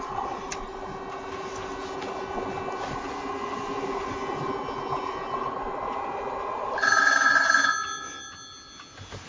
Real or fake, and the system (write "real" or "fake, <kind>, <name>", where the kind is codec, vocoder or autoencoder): real